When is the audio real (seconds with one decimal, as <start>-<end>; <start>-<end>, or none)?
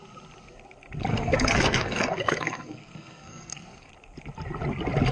0.0-1.1; 3.9-5.1